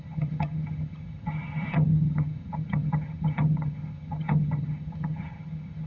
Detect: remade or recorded remade